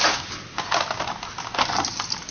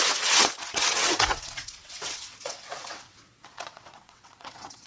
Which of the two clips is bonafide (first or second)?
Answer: first